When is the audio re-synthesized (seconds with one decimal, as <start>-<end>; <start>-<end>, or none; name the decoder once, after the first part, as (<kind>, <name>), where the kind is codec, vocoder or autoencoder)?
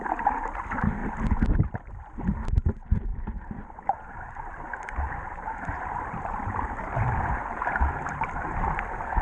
3.1-6.8 (vocoder, BigVGAN v2)